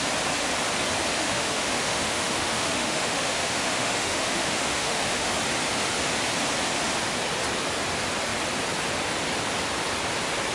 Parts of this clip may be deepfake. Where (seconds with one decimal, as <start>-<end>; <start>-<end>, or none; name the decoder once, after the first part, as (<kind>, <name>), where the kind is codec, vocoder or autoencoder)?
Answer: 1.1-5.3 (autoencoder, DAC-VAE)